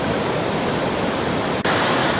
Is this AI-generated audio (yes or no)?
no